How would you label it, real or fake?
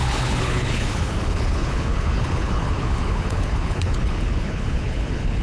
fake